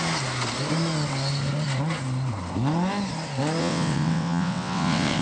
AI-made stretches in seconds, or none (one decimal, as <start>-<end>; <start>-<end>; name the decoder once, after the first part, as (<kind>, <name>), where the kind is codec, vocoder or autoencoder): 3.6-5.2 (vocoder, WaveNeXt)